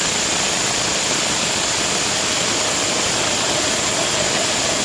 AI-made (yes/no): no